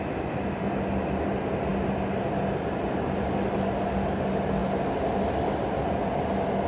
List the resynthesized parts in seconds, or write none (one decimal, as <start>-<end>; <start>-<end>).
none